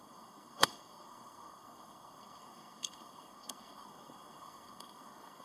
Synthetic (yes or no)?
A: yes